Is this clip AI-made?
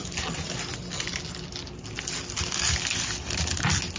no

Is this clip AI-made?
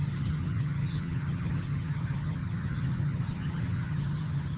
yes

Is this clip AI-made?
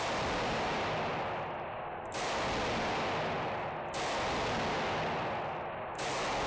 no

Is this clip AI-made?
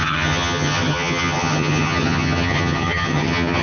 yes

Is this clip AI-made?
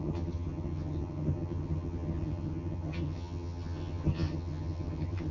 yes